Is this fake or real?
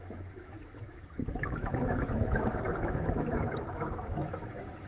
fake